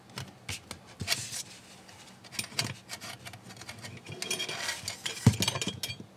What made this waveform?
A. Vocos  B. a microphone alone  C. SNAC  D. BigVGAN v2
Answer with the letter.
B